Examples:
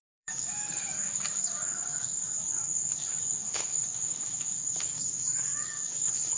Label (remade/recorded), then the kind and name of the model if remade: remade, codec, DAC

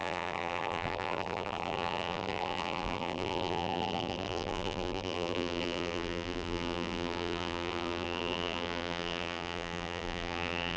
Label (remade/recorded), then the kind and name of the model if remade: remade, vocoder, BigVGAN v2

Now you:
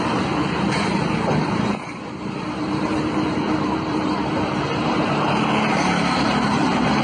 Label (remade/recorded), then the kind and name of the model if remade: remade, vocoder, BigVGAN v2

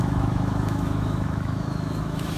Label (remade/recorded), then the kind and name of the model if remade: remade, autoencoder, DAC-VAE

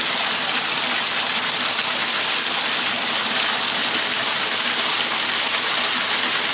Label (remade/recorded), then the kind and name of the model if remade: recorded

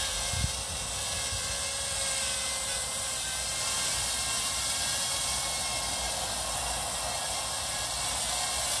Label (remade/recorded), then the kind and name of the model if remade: recorded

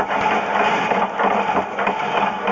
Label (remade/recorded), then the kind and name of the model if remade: recorded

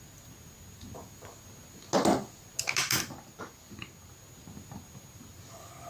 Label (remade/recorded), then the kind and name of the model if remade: recorded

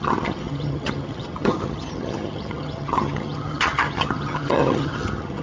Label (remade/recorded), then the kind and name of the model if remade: remade, vocoder, HiFi-GAN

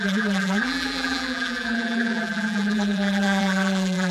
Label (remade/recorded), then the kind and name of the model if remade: remade, vocoder, BigVGAN v2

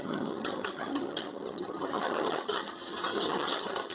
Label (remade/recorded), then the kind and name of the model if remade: remade, vocoder, HiFi-GAN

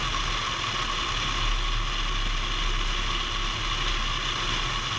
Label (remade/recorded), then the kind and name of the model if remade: recorded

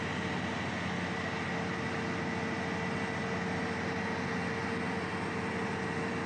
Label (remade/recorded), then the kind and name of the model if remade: recorded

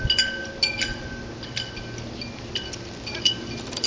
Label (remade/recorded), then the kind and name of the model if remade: recorded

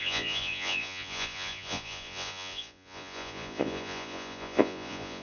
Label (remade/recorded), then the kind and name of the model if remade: remade, vocoder, Vocos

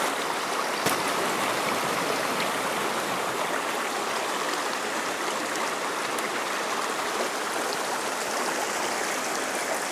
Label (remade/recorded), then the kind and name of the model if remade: recorded